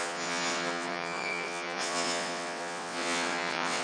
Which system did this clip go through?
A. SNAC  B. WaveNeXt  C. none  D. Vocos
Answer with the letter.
B